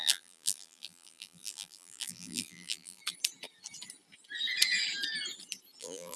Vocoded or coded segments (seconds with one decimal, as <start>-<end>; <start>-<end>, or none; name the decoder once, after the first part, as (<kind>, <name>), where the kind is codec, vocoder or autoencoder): 0.0-3.0 (vocoder, BigVGAN v2); 5.8-6.2